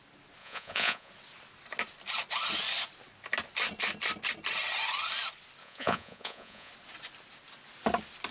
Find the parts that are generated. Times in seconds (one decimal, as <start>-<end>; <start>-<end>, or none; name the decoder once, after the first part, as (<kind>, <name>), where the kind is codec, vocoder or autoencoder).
0.4-1.1 (vocoder, Vocos); 5.6-6.7